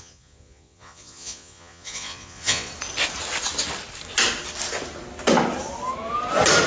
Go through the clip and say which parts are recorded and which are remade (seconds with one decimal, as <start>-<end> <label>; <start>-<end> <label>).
0.0-2.7 remade; 2.7-6.7 recorded